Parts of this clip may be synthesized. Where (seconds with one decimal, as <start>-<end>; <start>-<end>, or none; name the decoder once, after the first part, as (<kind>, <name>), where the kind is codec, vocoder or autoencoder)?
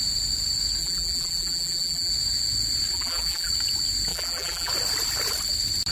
0.8-2.1 (vocoder, BigVGAN v2); 2.9-3.5; 4.1-4.7